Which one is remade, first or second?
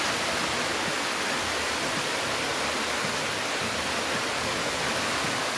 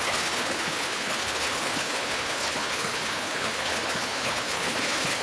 second